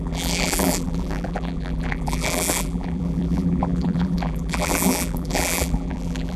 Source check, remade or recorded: remade